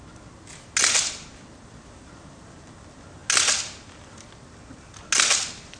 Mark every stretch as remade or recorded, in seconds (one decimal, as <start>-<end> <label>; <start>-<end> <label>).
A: 0.0-5.8 recorded